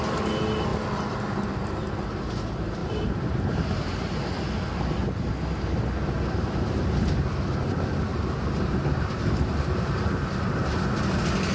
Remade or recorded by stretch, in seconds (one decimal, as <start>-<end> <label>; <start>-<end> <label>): 0.0-2.8 recorded; 2.8-4.2 remade; 4.2-8.1 recorded; 8.1-10.3 remade; 10.3-11.5 recorded